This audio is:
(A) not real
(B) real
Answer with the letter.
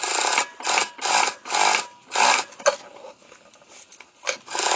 B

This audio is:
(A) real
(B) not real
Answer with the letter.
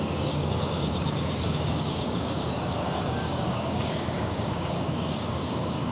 B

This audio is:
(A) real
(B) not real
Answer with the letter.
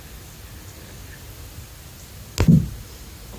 A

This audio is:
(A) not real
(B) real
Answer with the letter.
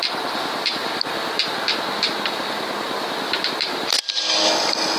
B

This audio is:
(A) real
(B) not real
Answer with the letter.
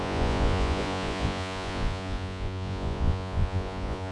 B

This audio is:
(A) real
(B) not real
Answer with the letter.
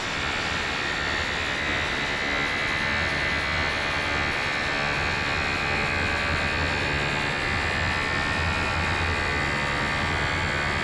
A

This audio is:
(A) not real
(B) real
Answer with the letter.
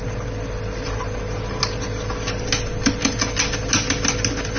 B